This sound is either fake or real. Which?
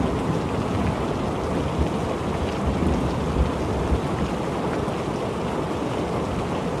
real